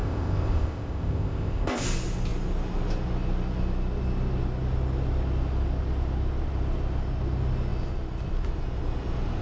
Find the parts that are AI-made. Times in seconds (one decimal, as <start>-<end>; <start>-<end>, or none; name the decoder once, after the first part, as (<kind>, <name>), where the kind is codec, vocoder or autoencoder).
0.0-1.8 (codec, ZipCodec)